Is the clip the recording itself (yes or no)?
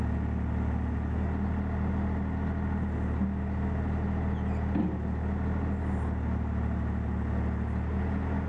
yes